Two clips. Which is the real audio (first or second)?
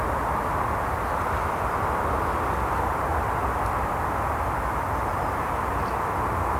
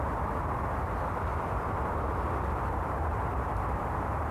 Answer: first